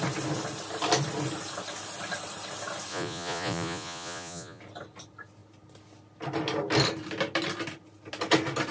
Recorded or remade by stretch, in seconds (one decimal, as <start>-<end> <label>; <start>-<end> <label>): 0.0-2.9 recorded; 2.9-4.6 remade; 4.6-8.7 recorded